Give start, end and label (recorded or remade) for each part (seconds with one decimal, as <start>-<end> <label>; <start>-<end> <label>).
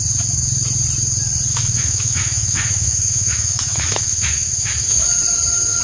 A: 0.0-1.5 recorded; 1.5-5.0 remade; 5.0-5.8 recorded